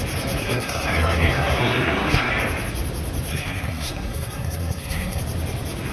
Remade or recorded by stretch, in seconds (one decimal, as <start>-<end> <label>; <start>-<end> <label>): 0.0-0.4 recorded; 0.4-2.3 remade; 2.3-3.3 recorded; 3.3-5.2 remade; 5.2-5.9 recorded